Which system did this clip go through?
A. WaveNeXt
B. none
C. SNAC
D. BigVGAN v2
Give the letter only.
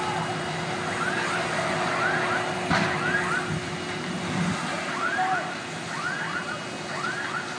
B